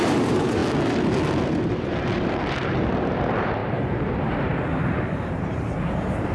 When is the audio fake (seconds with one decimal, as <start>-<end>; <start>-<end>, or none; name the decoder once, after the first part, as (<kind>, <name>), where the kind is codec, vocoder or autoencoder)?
0.0-0.6 (vocoder, BigVGAN v2); 1.7-6.3